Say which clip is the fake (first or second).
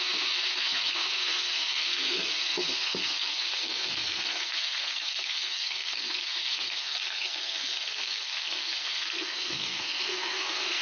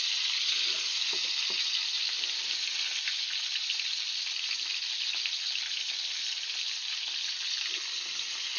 first